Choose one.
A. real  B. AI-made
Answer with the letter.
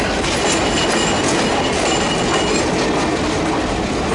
A